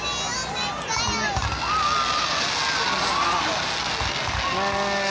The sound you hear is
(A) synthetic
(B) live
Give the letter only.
B